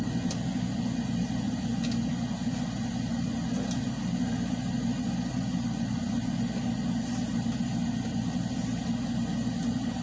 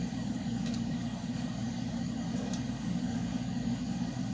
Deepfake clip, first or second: second